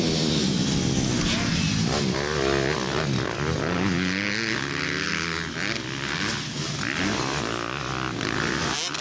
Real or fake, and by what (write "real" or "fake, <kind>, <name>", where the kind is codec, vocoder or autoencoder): real